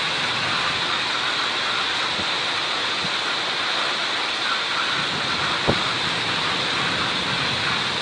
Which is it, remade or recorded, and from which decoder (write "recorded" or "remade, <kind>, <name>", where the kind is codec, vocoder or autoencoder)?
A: recorded